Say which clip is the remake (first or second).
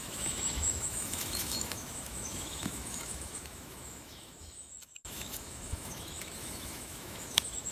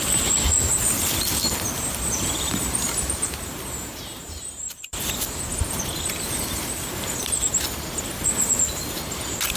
first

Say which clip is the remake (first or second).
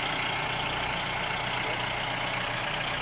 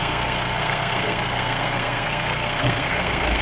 second